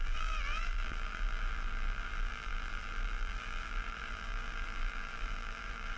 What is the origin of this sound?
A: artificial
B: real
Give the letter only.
A